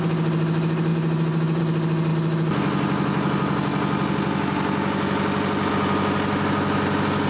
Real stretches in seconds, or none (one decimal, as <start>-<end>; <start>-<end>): 0.0-0.9; 1.6-7.3